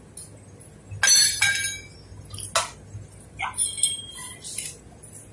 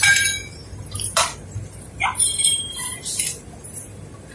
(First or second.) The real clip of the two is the first